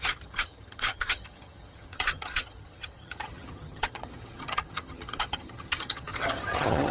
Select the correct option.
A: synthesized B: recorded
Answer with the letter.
A